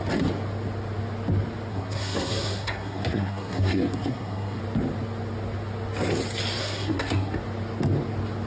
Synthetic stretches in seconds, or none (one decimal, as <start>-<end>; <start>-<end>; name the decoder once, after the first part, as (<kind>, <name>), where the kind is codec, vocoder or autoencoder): 1.7-4.6 (codec, SNAC); 6.6-7.3